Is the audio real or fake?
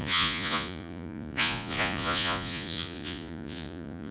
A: fake